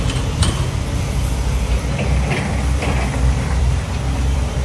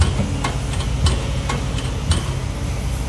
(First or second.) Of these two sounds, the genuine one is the second